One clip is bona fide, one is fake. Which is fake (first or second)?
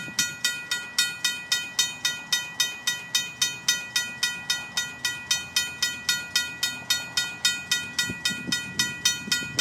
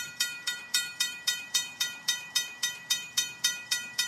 second